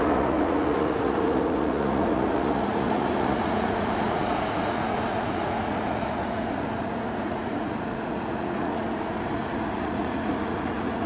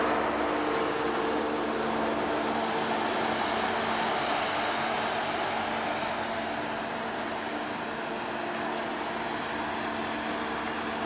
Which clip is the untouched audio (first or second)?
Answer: second